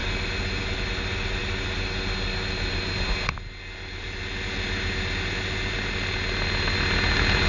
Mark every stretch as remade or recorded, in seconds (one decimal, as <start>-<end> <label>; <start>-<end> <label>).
0.0-7.5 recorded